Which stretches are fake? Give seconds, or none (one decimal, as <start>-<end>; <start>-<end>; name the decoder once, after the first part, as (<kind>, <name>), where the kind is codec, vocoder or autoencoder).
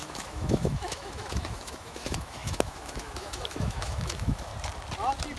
0.0-4.5 (autoencoder, DAC-VAE)